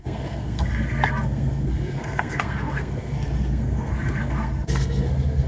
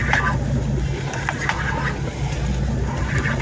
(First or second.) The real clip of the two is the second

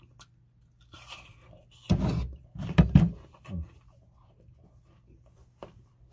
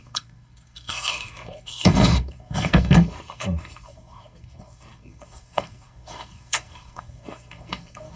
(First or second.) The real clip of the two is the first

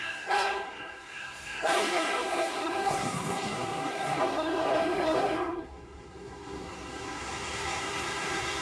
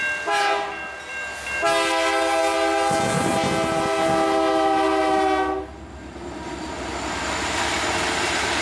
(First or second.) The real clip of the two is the second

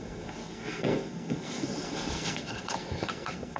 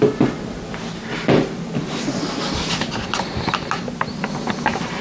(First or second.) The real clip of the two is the second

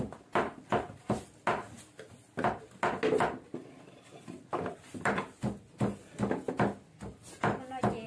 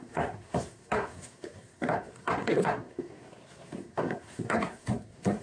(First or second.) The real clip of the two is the first